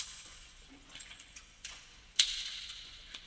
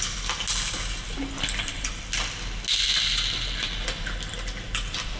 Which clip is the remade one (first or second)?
first